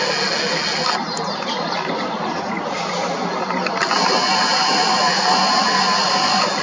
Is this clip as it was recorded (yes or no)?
yes